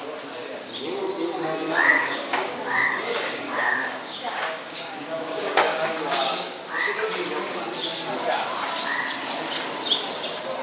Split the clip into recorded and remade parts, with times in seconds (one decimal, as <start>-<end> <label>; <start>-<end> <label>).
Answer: 0.0-1.9 recorded; 1.9-6.6 remade; 6.6-10.6 recorded